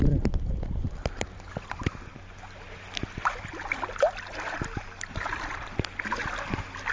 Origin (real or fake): real